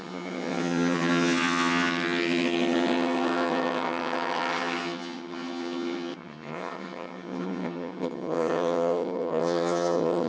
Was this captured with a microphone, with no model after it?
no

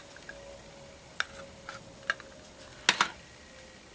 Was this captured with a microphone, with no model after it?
yes